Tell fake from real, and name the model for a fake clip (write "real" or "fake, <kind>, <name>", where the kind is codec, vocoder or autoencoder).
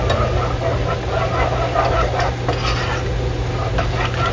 real